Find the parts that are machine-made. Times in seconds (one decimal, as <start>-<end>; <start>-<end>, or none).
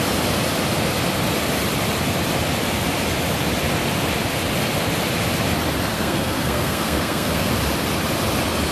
5.9-7.5